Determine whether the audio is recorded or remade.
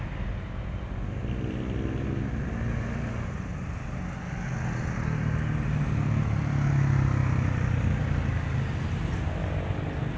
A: recorded